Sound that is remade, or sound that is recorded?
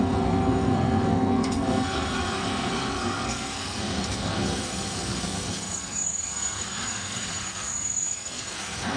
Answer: remade